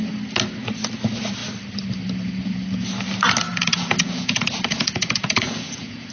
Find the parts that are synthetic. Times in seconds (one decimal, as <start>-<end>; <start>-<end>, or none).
3.5-6.1